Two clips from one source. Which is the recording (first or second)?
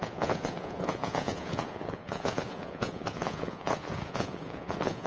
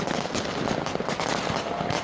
second